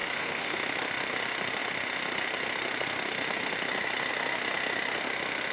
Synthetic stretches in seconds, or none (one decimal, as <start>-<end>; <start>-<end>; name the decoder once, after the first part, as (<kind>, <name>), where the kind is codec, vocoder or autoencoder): 0.0-0.6 (autoencoder, DAC-VAE)